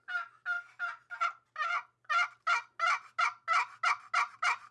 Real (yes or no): yes